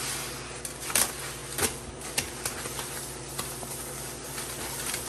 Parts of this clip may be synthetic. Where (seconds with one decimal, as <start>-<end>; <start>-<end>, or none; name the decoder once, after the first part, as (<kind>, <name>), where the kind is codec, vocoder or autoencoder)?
none